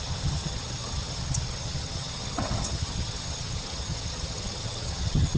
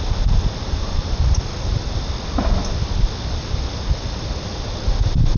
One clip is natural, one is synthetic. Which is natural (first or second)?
second